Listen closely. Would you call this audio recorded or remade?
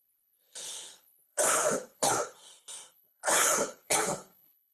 remade